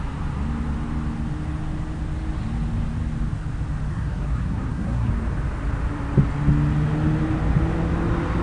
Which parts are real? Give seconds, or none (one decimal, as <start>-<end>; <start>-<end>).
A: 0.0-3.9; 5.1-8.4